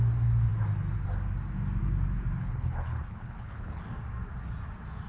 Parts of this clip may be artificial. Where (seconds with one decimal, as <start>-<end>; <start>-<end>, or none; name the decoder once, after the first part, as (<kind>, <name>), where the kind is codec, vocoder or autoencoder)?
2.4-3.8 (codec, HILCodec)